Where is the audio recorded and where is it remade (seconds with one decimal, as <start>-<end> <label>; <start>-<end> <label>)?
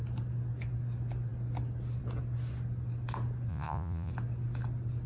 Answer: 0.0-3.5 recorded; 3.5-4.1 remade; 4.1-5.1 recorded